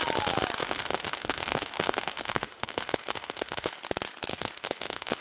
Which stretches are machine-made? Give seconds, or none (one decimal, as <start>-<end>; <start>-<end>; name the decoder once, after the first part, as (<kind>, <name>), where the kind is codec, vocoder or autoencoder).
0.6-3.7 (autoencoder, DAC-VAE); 4.3-5.2